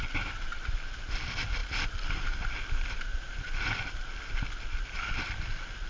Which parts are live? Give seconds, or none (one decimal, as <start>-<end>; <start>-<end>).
0.0-5.9

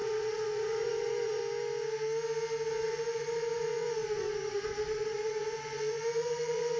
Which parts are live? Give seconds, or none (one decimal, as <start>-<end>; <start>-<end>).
1.4-2.7

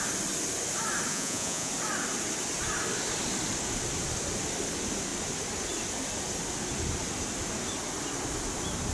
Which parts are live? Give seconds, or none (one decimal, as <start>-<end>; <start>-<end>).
0.0-1.1; 1.7-8.9

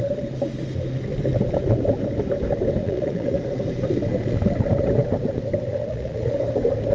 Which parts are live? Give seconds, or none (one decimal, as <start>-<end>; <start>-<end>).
0.0-2.8; 3.4-5.8; 6.3-6.9

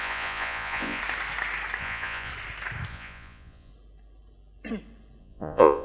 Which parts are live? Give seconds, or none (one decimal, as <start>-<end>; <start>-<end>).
1.0-1.8; 2.3-2.9; 3.7-5.2